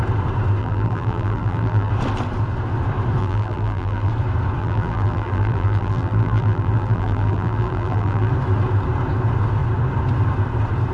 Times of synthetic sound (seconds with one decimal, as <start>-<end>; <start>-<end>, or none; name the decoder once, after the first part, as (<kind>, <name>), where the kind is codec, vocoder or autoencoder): 0.6-1.9 (vocoder, BigVGAN v2); 3.2-4.1; 4.6-8.3